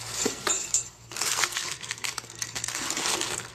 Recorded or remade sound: remade